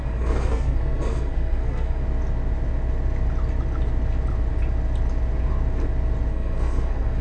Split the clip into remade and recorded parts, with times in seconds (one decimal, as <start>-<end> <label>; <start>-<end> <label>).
0.0-2.0 remade; 2.0-6.3 recorded; 6.3-7.2 remade